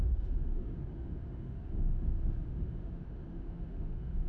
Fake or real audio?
fake